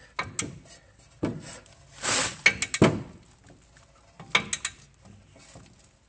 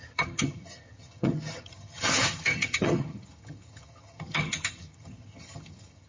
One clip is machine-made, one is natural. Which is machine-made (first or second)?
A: second